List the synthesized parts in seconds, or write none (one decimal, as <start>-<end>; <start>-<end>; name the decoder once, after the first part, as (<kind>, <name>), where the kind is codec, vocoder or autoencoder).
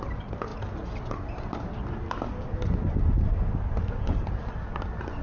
none